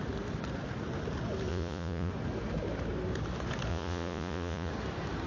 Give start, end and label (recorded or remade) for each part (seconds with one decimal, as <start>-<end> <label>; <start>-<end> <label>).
0.0-1.5 recorded; 1.5-2.1 remade; 2.1-3.7 recorded; 3.7-4.7 remade; 4.7-5.3 recorded